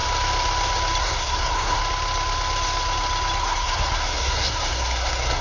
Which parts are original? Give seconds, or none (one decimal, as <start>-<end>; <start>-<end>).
0.0-1.0; 1.8-3.4